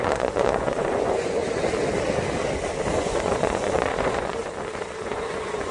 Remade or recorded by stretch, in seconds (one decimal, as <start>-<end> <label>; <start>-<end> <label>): 0.0-1.4 remade; 1.4-2.9 recorded; 2.9-4.4 remade; 4.4-5.0 recorded; 5.0-5.7 remade